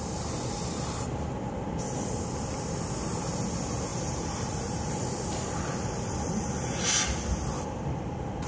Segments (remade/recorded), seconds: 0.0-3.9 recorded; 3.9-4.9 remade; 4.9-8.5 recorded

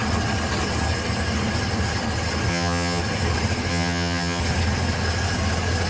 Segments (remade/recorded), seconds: 0.0-2.5 recorded; 2.5-3.0 remade; 3.0-3.7 recorded; 3.7-4.4 remade; 4.4-5.9 recorded

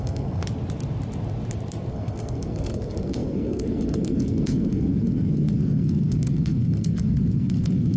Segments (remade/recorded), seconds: 0.0-0.4 remade; 0.4-1.9 recorded; 1.9-8.0 remade

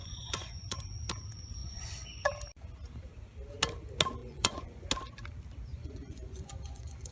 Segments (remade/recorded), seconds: 0.0-0.8 remade; 0.8-1.6 recorded; 1.6-2.3 remade; 2.3-4.2 recorded; 4.2-4.9 remade; 4.9-5.7 recorded; 5.7-7.1 remade